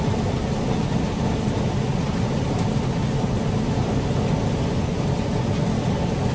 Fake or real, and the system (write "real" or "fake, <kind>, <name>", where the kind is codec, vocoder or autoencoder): real